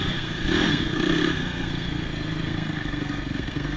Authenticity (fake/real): fake